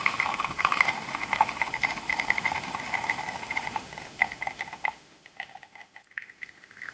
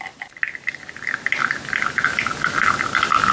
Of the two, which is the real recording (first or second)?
second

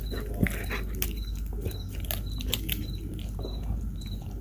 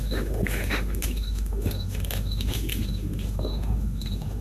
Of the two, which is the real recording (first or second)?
first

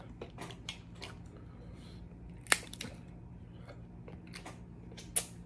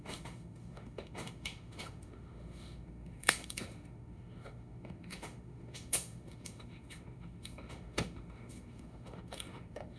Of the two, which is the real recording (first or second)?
first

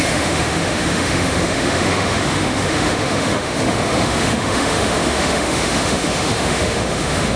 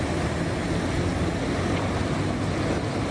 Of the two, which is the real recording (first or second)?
second